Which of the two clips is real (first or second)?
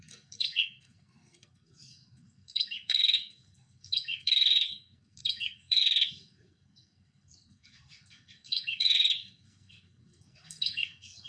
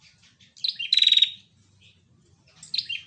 second